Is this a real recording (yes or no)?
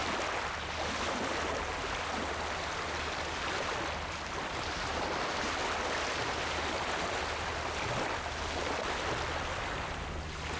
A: yes